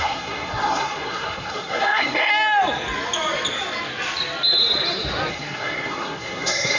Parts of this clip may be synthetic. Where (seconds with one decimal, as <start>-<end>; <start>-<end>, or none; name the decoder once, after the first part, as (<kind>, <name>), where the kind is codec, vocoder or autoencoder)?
0.0-2.3 (codec, SNAC); 5.3-6.8